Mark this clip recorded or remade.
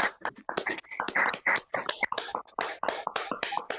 remade